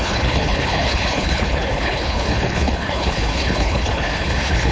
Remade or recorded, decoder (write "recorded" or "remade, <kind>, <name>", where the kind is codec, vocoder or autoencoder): remade, codec, HILCodec